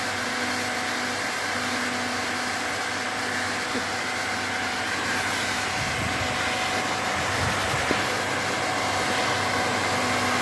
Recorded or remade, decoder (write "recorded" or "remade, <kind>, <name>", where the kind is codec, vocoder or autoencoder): recorded